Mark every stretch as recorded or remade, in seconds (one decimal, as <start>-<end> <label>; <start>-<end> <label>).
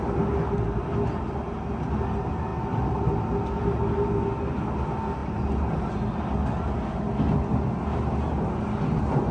0.0-9.3 recorded